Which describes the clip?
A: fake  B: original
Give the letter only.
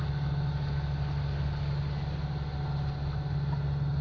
B